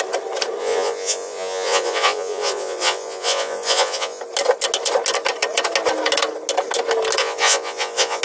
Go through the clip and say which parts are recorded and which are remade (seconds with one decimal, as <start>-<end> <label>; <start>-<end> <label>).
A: 0.0-0.6 recorded; 0.6-4.2 remade; 4.2-7.2 recorded; 7.2-8.2 remade